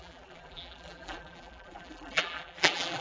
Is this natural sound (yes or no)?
no